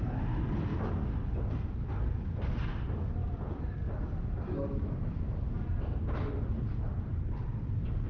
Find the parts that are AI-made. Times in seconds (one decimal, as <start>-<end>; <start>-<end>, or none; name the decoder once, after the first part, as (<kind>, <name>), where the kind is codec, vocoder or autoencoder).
none